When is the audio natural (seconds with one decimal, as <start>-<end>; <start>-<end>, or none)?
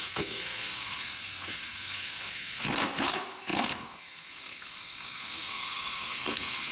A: none